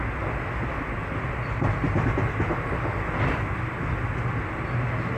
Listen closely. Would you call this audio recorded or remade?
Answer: recorded